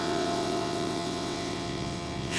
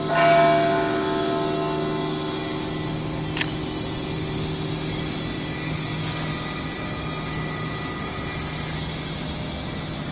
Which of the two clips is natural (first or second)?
second